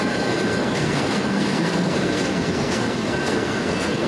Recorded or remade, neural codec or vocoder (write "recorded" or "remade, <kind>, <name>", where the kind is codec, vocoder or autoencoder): remade, codec, SNAC